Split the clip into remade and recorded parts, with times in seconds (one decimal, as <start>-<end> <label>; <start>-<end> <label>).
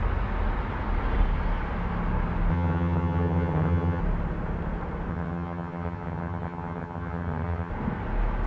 0.0-2.5 recorded; 2.5-4.0 remade; 4.0-5.1 recorded; 5.1-7.7 remade; 7.7-8.5 recorded